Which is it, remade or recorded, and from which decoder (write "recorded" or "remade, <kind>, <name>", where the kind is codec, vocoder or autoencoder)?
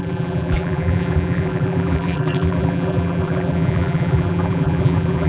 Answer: remade, vocoder, BigVGAN v2